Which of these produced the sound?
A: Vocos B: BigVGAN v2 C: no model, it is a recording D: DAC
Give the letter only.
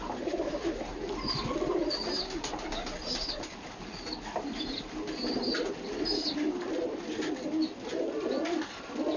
C